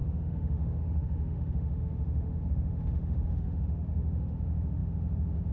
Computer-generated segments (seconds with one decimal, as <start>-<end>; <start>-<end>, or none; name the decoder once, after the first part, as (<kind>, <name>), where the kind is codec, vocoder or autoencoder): 0.0-5.5 (autoencoder, DAC-VAE)